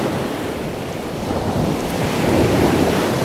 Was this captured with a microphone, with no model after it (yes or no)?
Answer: no